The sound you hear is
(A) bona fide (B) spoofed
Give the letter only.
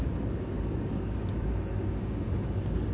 B